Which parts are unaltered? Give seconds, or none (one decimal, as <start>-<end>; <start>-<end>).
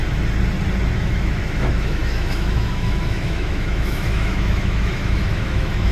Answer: 0.0-0.9